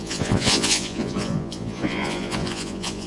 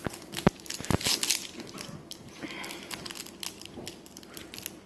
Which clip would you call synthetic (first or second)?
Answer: first